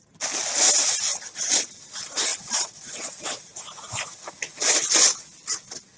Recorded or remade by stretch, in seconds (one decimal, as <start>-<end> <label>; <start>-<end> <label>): 0.0-2.3 recorded; 2.3-4.2 remade; 4.2-6.0 recorded